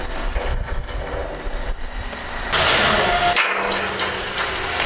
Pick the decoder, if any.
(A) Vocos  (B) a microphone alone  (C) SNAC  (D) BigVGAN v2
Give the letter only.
B